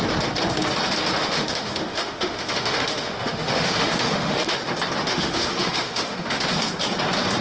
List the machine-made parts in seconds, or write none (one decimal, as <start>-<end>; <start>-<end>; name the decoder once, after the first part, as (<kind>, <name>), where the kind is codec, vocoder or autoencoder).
1.2-4.6 (autoencoder, DAC-VAE); 5.0-6.4